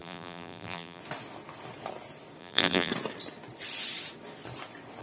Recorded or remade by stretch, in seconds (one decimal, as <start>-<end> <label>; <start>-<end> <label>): 0.0-1.0 remade; 1.0-2.4 recorded; 2.4-2.9 remade; 2.9-5.0 recorded